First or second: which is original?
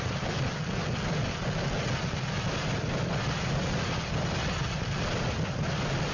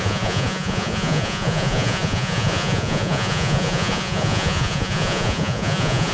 first